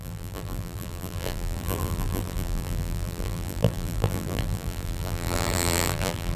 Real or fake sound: fake